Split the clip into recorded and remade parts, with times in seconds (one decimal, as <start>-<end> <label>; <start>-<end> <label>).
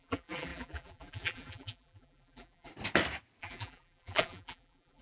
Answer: 0.0-2.7 remade; 2.7-3.4 recorded; 3.4-5.0 remade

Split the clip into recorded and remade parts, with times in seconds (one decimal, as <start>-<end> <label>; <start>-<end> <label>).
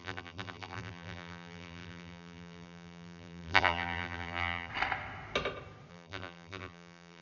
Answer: 0.0-4.7 remade; 4.7-5.9 recorded; 5.9-7.2 remade